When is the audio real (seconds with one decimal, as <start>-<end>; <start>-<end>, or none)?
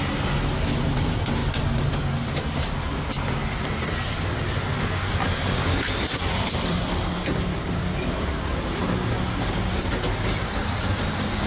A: 0.0-1.4; 2.3-3.4; 8.3-11.5